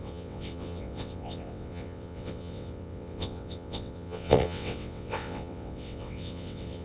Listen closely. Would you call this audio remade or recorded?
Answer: remade